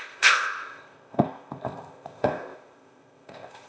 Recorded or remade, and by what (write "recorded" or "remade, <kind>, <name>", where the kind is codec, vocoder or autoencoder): remade, codec, ZipCodec